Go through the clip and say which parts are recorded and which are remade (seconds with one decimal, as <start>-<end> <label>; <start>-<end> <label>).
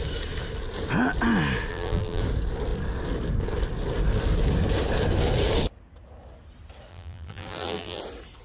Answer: 0.0-1.7 recorded; 1.7-2.2 remade; 2.2-6.9 recorded; 6.9-8.0 remade; 8.0-8.4 recorded